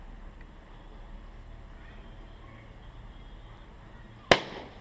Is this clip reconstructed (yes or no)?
no